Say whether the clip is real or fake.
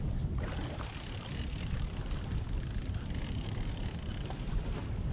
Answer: real